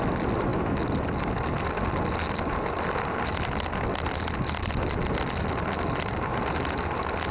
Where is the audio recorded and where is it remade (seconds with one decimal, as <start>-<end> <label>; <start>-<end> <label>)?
0.0-7.3 recorded